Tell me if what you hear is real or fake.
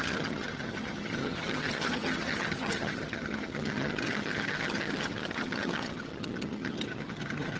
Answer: fake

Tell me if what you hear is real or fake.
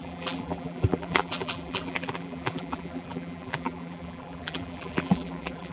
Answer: fake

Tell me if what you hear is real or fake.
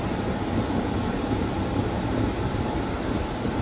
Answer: real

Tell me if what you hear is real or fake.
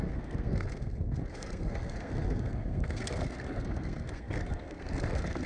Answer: fake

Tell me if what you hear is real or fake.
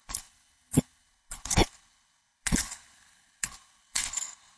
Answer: fake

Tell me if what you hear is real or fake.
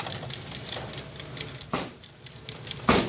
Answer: real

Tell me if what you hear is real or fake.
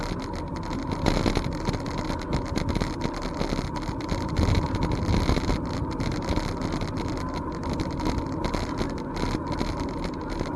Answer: real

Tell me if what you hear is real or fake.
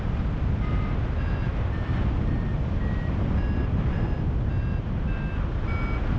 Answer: real